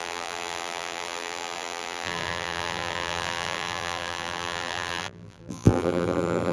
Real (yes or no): no